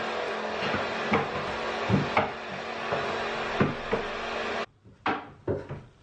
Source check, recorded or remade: recorded